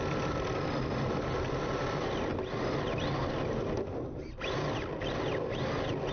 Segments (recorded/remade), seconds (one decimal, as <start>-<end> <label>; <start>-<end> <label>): 0.0-6.1 recorded